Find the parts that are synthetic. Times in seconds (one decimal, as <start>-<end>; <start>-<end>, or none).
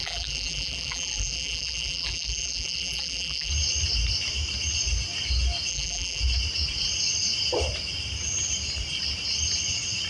0.0-3.5; 5.7-6.2